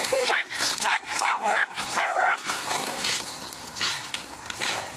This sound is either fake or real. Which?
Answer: fake